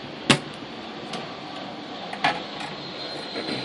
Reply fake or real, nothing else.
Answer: real